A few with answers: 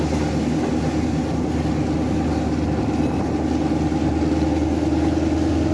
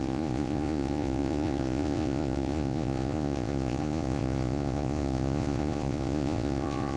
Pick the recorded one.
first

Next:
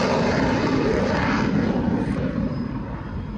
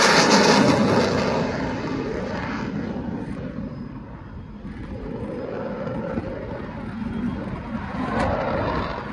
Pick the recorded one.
second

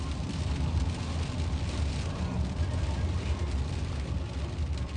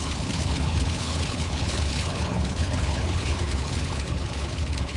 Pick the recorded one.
first